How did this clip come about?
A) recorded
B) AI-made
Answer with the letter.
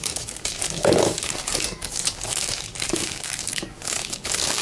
B